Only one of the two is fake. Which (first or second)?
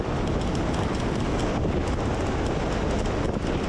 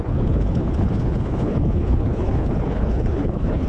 second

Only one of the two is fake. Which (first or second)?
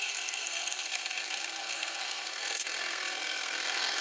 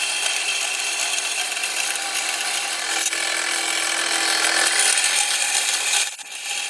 first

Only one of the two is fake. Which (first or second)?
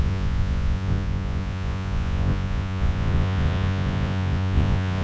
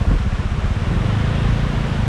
first